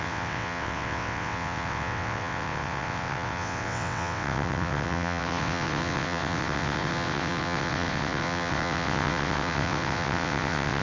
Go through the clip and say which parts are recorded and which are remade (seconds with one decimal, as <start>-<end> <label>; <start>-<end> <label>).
0.0-10.8 remade